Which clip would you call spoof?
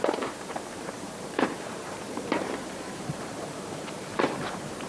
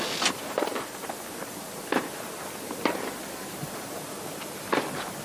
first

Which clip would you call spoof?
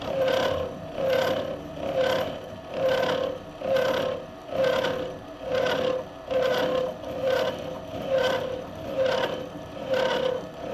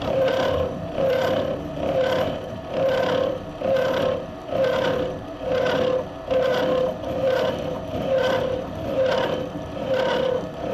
second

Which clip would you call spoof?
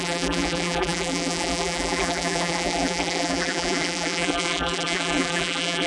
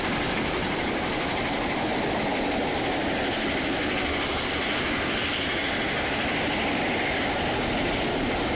first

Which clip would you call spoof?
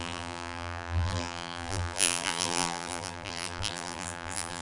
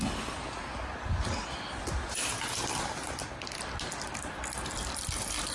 first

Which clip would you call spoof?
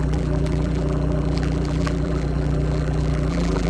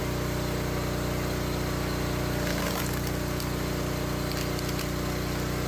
first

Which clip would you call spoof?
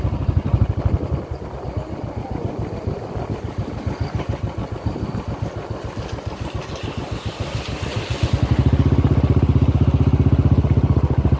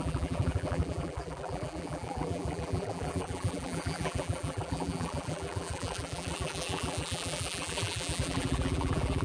second